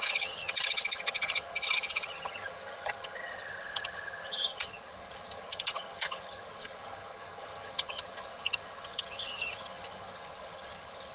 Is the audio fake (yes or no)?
yes